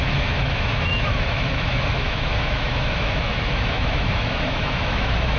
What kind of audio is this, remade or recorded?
remade